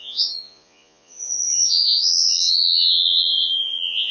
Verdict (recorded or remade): remade